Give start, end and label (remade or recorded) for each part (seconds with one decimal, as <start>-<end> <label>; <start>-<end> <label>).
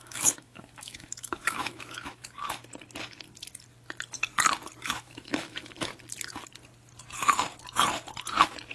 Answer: 0.0-2.6 remade; 2.6-4.8 recorded; 4.8-5.9 remade; 5.9-8.7 recorded